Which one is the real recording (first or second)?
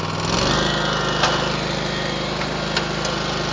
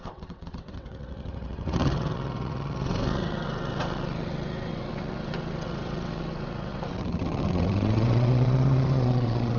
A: first